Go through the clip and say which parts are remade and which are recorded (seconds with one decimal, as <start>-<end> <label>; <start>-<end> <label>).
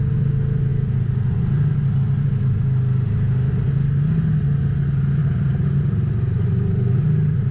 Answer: 0.0-5.2 recorded; 5.2-6.1 remade; 6.1-7.5 recorded